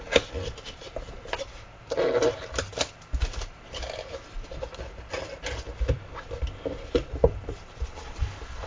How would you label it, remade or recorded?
recorded